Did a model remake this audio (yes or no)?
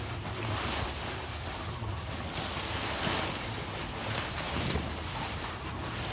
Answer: no